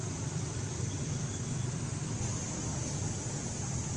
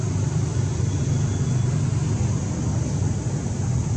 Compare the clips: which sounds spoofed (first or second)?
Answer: first